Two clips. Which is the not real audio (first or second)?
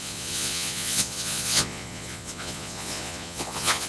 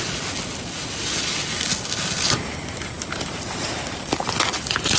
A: first